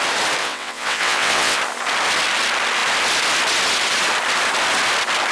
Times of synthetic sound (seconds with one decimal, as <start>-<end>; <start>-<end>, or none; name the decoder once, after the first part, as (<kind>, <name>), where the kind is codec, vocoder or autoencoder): 0.4-1.6 (vocoder, WaveNeXt)